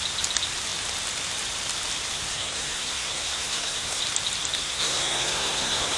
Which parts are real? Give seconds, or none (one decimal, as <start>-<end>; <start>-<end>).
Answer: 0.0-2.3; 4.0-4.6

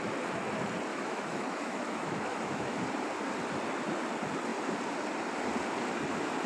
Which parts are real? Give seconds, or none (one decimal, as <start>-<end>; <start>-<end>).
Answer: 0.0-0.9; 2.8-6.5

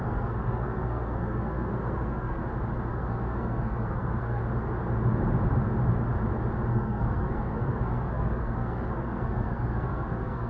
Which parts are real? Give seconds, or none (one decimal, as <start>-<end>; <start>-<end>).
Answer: 2.4-2.9; 4.4-6.7